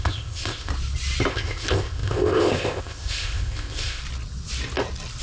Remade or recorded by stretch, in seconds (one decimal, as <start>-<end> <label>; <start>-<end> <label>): 0.0-0.7 remade; 0.7-1.3 recorded; 1.3-4.0 remade; 4.0-5.2 recorded